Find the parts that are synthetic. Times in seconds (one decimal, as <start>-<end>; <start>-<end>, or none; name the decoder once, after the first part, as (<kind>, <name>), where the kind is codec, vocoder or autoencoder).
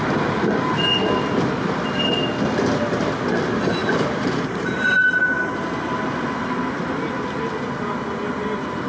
3.8-5.1 (vocoder, BigVGAN v2)